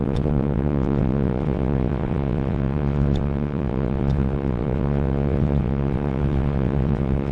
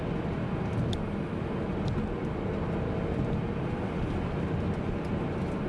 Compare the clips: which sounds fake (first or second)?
first